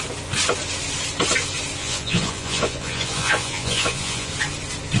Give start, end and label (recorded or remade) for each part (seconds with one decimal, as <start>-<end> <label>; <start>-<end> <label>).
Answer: 0.0-1.8 recorded; 1.8-4.3 remade; 4.3-5.0 recorded